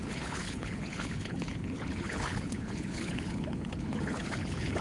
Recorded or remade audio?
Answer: remade